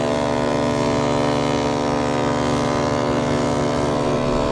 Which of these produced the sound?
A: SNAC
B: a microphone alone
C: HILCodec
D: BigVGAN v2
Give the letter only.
B